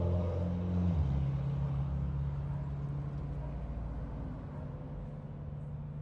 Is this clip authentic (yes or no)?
yes